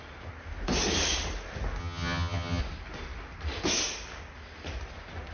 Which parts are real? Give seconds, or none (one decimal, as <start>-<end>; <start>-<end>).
0.0-1.8; 2.6-5.3